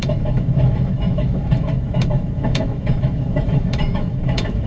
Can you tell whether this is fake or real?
fake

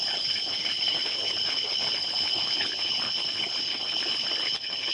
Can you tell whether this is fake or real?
fake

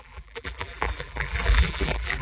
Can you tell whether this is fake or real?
fake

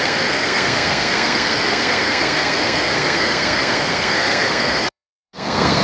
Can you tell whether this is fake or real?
fake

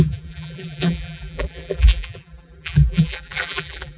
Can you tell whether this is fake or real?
fake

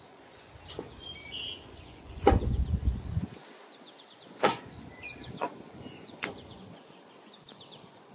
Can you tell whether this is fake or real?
fake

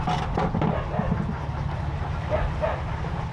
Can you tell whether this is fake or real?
real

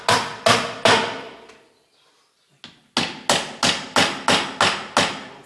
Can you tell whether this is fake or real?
real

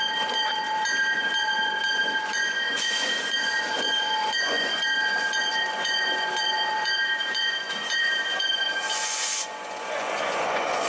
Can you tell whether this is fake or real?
fake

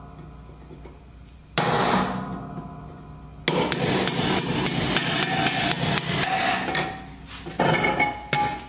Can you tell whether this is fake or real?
real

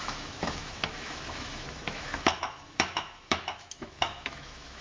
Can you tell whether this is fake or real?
fake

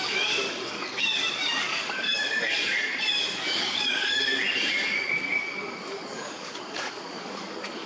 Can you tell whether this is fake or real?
fake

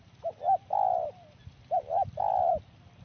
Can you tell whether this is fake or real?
real